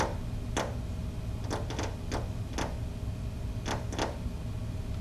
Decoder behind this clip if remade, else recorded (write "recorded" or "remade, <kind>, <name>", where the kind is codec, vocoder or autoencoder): recorded